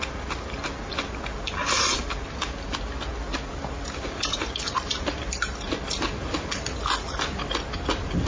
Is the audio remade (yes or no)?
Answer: no